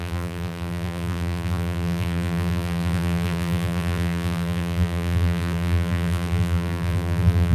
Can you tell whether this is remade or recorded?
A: remade